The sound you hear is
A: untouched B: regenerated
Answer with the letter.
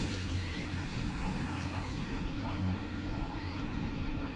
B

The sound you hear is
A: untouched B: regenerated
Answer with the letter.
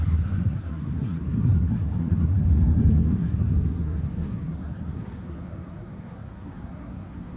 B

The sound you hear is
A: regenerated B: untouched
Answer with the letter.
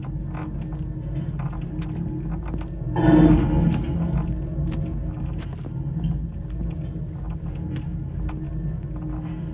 B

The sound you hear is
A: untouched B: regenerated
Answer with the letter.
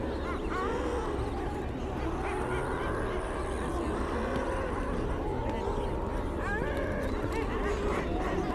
A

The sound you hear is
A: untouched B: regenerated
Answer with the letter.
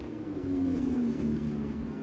B